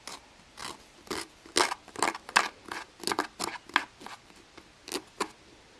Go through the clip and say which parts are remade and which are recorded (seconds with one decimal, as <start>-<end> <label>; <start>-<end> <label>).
0.0-5.8 recorded